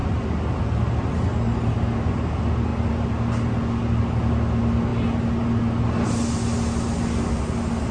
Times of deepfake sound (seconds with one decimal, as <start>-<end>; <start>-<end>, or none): none